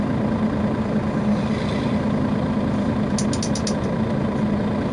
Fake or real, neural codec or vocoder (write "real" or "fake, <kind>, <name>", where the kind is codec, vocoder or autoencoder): real